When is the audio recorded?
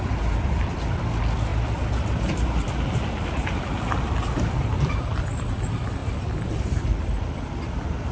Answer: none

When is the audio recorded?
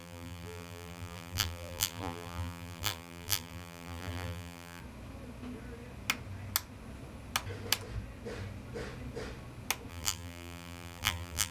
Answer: 4.8-9.9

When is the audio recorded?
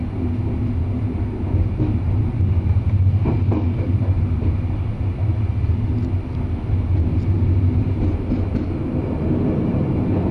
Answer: 0.0-10.3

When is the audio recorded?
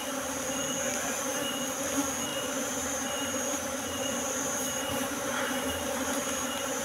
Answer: 0.0-2.3